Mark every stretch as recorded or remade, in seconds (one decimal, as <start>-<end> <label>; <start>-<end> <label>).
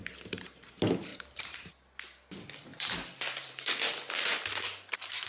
0.0-0.7 remade; 0.7-1.1 recorded; 1.1-1.7 remade; 1.7-2.7 recorded; 2.7-4.1 remade; 4.1-5.3 recorded